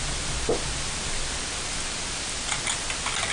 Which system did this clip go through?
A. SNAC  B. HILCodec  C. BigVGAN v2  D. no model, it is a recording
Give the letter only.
D